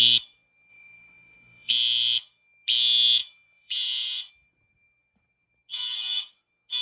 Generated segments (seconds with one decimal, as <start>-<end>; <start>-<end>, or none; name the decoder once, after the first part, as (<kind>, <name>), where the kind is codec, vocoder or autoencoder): 0.7-1.7 (vocoder, Vocos); 3.2-4.3; 5.7-6.3